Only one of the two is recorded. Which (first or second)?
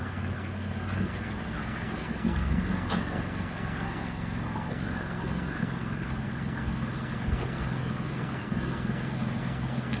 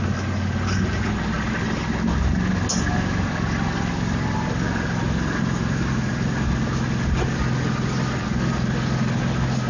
second